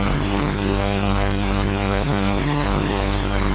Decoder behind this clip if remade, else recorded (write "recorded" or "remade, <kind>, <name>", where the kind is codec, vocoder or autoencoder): remade, codec, SNAC